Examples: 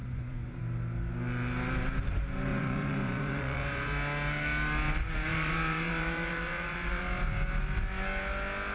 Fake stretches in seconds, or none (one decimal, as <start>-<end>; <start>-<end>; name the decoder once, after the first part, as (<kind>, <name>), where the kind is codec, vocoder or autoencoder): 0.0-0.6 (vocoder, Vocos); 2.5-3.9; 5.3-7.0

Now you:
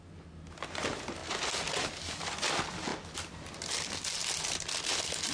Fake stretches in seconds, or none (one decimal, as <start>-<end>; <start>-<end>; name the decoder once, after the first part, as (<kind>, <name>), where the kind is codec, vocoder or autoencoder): none

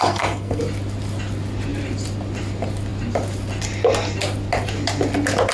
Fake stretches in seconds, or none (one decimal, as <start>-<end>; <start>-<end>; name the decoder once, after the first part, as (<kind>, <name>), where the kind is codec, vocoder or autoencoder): 0.0-0.6 (codec, SNAC)

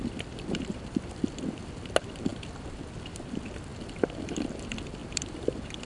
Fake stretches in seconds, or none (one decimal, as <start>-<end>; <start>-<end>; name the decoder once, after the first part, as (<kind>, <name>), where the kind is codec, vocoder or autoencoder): 0.0-1.2 (vocoder, BigVGAN v2); 2.3-3.3; 3.7-4.6; 5.0-5.8

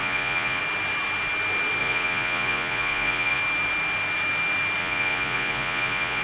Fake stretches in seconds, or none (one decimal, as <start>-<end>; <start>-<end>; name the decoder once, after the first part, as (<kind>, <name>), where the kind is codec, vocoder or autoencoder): 0.0-0.6 (vocoder, Vocos); 1.8-3.4; 4.8-6.2

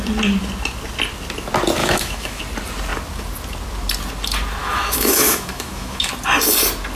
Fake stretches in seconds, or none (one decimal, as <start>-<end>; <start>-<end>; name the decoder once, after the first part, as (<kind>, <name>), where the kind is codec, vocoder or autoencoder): 1.8-2.4 (autoencoder, DAC-VAE); 4.6-6.1

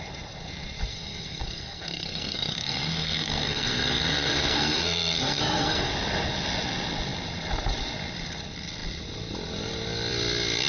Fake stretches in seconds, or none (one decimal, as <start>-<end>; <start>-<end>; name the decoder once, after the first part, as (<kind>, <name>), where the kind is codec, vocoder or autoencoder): 0.9-5.9 (codec, SNAC)